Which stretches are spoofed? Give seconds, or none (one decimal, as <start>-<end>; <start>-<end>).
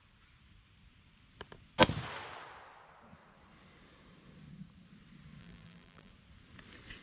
5.4-6.1